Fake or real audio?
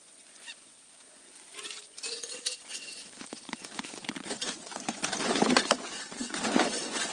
fake